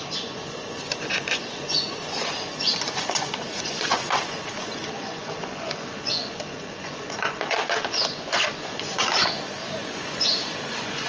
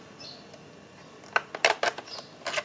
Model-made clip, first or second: first